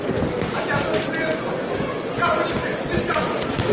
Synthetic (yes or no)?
no